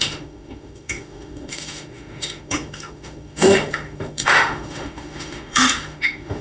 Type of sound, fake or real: fake